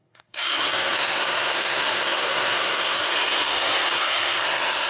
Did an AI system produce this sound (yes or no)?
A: yes